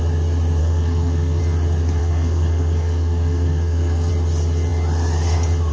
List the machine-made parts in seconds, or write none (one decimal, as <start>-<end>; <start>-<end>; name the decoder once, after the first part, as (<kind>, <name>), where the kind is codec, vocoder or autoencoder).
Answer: 0.6-1.4 (codec, SNAC); 2.0-4.1